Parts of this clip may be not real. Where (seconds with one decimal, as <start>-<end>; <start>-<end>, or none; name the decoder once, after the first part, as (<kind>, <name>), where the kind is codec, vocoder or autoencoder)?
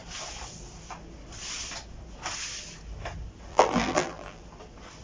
3.5-4.4 (vocoder, BigVGAN v2)